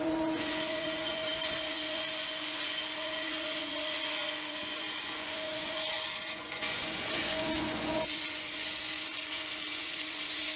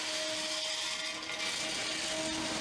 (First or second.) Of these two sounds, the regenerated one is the first